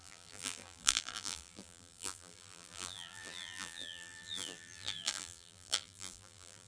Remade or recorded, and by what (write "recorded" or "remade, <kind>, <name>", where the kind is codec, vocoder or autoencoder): remade, vocoder, BigVGAN v2